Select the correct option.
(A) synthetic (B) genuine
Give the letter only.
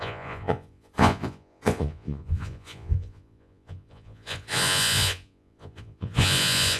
A